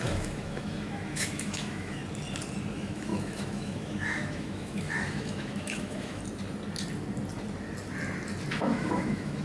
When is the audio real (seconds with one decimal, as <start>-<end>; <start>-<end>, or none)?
2.0-2.7; 6.2-8.5